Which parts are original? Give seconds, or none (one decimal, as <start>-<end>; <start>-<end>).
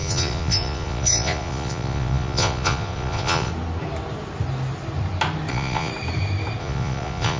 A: 3.5-5.5; 5.9-6.6